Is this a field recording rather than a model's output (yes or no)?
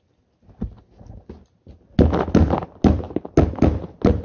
yes